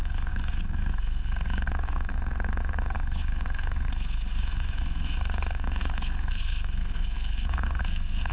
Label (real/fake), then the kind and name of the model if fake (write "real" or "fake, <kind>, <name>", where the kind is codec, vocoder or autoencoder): fake, codec, SNAC